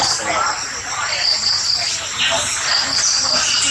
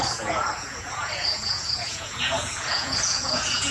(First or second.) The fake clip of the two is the second